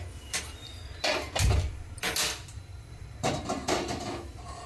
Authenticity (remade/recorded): remade